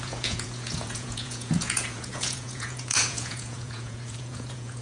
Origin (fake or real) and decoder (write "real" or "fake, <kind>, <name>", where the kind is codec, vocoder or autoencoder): fake, vocoder, Vocos